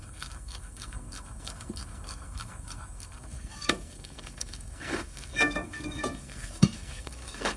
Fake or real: fake